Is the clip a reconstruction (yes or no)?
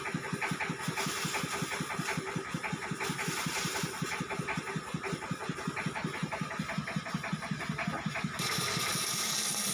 no